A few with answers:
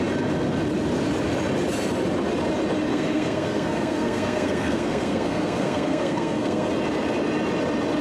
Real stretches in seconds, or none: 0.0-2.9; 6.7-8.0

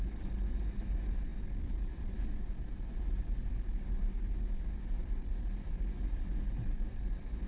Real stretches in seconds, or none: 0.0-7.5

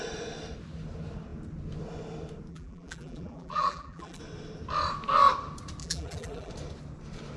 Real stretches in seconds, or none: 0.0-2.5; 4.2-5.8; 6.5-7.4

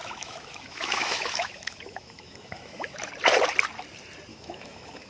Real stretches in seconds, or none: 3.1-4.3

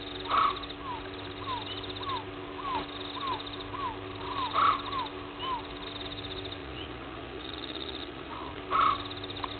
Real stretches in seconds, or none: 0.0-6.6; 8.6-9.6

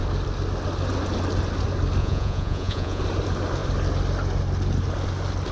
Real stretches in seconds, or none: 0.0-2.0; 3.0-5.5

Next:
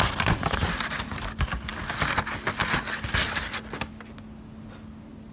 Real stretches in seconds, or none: 0.0-5.3